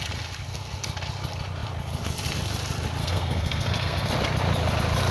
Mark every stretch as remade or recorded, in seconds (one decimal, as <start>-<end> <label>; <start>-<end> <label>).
0.0-3.0 recorded; 3.0-4.1 remade; 4.1-5.1 recorded